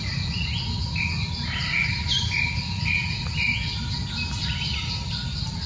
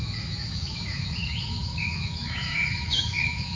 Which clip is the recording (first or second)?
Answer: first